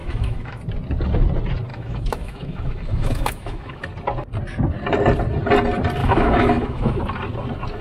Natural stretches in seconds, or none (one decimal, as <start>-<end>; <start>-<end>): 0.6-1.7; 3.8-6.0; 7.0-7.8